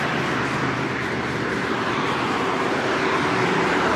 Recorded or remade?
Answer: recorded